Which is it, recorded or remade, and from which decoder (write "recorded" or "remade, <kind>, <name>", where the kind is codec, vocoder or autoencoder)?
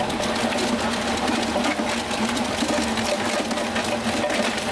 recorded